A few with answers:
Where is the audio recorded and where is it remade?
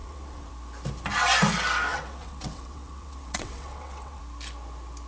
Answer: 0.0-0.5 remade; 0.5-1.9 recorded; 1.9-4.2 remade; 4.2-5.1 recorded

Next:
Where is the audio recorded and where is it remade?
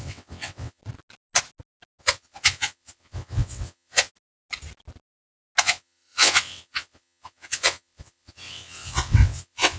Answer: 0.0-0.8 remade; 0.8-2.0 recorded; 2.0-4.1 remade; 4.1-5.6 recorded; 5.6-9.8 remade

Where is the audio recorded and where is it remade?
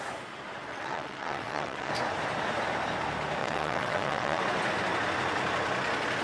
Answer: 0.0-0.7 recorded; 0.7-1.9 remade; 1.9-3.4 recorded; 3.4-4.4 remade; 4.4-6.2 recorded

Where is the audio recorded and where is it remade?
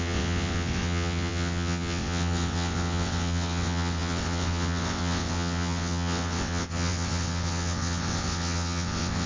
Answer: 0.0-9.3 remade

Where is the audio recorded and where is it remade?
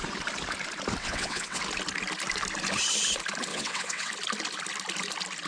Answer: 0.0-1.0 recorded; 1.0-1.6 remade; 1.6-3.5 recorded; 3.5-4.1 remade; 4.1-5.5 recorded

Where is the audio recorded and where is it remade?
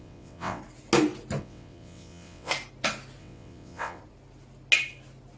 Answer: 0.0-0.6 remade; 0.6-1.4 recorded; 1.4-2.5 remade; 2.5-3.2 recorded; 3.2-4.0 remade; 4.0-5.4 recorded